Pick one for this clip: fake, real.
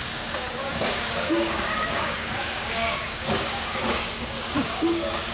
fake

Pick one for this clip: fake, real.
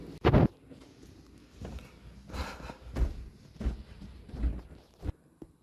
real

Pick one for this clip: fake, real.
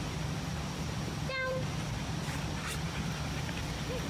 real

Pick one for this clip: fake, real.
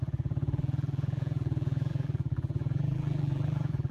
fake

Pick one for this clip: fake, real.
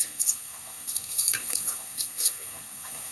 fake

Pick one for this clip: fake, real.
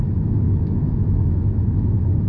fake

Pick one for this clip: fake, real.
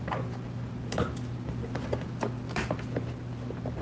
real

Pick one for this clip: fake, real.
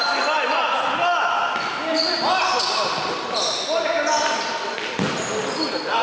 real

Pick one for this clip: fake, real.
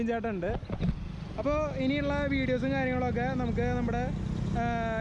real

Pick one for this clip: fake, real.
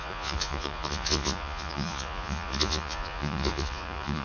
fake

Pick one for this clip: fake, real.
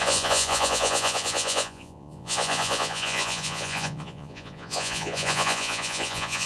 fake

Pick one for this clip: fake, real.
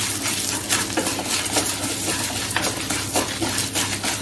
real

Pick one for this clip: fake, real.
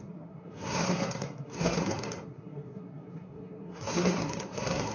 fake